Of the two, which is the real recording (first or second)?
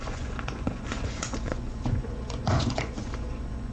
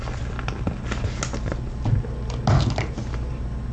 second